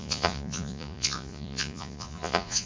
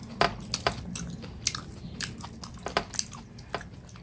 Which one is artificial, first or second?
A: first